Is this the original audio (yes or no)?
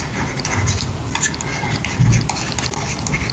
yes